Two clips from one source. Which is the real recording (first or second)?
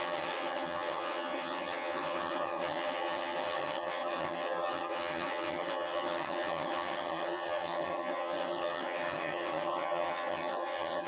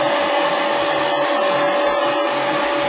second